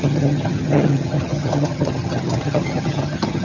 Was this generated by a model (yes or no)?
yes